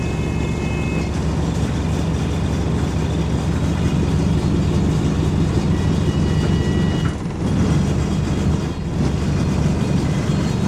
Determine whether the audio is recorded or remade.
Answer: recorded